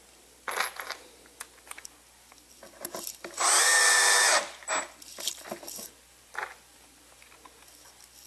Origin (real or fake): real